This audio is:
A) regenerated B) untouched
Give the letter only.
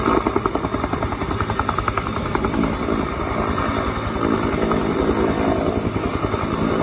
B